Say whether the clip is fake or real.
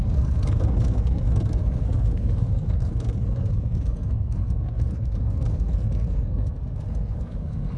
fake